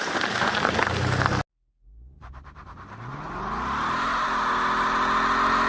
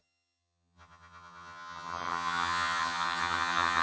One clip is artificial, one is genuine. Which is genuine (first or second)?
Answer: first